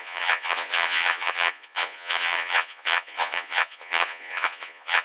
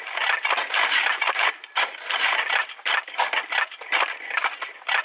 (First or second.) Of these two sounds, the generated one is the first